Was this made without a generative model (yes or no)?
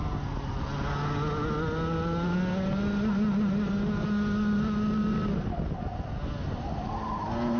yes